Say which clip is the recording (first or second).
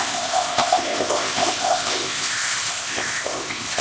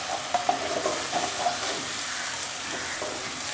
second